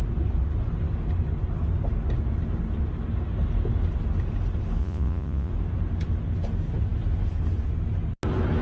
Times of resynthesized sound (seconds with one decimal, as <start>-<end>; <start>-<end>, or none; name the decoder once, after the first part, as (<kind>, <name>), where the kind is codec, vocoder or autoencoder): 4.8-5.5 (vocoder, Vocos)